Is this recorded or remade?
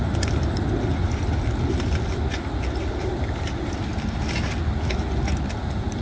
recorded